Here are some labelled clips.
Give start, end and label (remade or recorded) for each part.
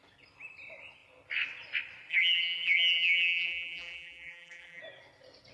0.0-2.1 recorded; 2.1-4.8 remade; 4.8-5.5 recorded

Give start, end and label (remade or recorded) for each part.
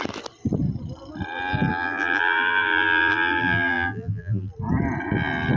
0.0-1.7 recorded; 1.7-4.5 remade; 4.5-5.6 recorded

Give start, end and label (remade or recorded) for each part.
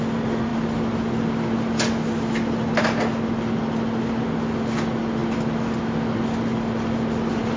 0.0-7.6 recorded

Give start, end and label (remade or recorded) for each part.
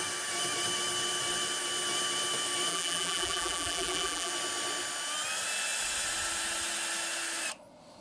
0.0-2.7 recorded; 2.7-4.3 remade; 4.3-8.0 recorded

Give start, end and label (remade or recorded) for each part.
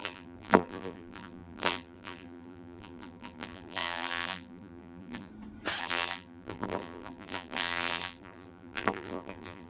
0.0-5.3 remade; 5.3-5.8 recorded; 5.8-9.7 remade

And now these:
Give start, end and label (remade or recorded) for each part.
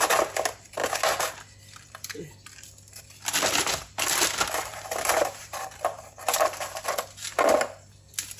0.0-4.7 recorded; 4.7-6.8 remade; 6.8-7.3 recorded; 7.3-7.9 remade; 7.9-8.4 recorded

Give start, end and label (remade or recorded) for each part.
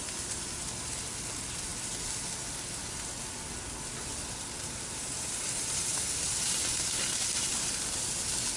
0.0-4.1 recorded; 4.1-7.7 remade; 7.7-8.6 recorded